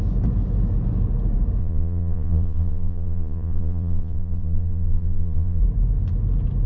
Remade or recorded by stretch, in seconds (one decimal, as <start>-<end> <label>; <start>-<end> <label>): 0.0-1.6 recorded; 1.6-5.6 remade; 5.6-6.7 recorded